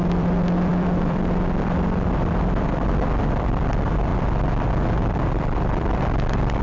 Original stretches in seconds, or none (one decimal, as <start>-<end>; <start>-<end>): 4.1-5.1